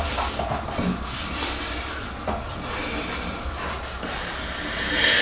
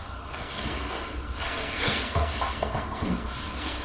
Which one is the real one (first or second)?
first